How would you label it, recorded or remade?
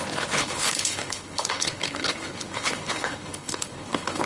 remade